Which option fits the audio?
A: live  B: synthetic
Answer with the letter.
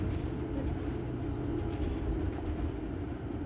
A